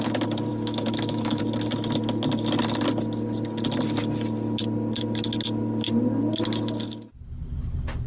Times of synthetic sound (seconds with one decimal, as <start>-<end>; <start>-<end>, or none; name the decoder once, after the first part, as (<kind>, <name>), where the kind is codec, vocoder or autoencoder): 0.5-1.4 (autoencoder, DAC-VAE)